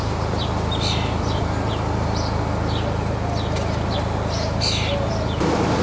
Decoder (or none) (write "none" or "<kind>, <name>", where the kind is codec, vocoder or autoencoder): none